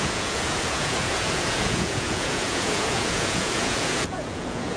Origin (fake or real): fake